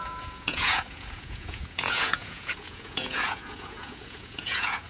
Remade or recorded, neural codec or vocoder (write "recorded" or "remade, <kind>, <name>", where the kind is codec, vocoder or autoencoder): remade, vocoder, Vocos